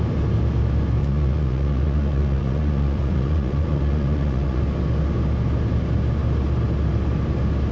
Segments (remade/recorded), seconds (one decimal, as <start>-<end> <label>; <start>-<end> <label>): 0.0-1.0 recorded; 1.0-4.6 remade; 4.6-7.7 recorded